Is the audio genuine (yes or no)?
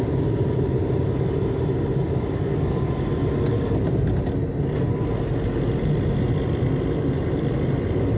yes